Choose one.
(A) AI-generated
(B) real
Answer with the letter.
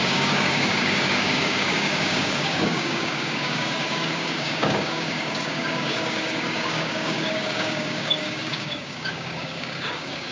A